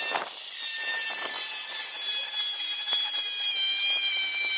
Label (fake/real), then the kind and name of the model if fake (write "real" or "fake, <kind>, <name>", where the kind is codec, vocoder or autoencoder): real